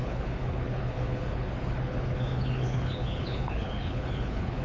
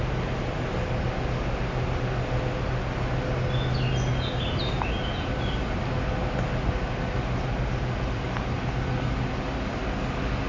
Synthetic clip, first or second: first